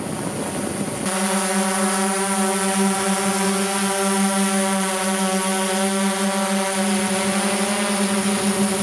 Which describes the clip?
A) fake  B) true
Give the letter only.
B